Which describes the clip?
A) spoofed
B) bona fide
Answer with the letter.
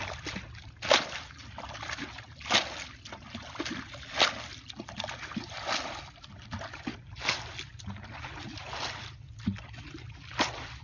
B